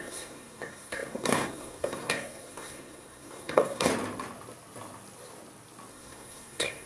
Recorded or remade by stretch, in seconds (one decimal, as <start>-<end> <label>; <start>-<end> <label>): 0.0-3.9 remade; 3.9-5.9 recorded; 5.9-6.9 remade